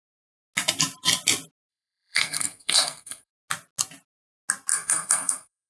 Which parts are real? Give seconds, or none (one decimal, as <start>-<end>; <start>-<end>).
0.0-1.7; 3.3-4.7